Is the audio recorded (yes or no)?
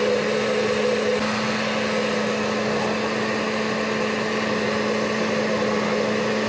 yes